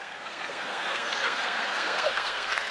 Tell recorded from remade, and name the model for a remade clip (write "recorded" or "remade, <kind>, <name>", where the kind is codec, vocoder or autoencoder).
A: remade, codec, SNAC